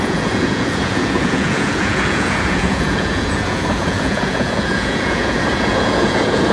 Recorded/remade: remade